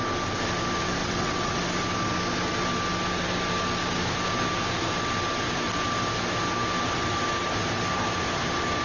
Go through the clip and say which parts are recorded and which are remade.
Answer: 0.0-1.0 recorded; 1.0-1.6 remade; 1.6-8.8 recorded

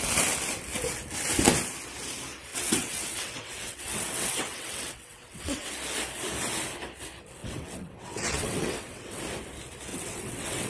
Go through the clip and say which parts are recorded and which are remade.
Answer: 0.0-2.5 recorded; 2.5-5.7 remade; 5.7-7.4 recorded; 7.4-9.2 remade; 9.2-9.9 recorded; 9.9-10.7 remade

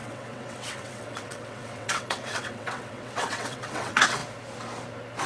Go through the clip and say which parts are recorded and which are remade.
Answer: 0.0-4.2 remade; 4.2-5.3 recorded

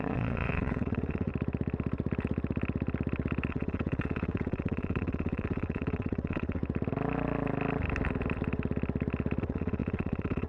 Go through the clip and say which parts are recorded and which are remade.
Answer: 0.0-1.3 remade; 1.3-3.5 recorded; 3.5-6.6 remade; 6.6-9.4 recorded; 9.4-10.5 remade